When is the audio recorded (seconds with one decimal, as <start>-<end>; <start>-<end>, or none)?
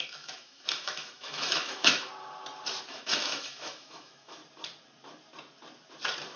2.1-2.9; 4.4-6.4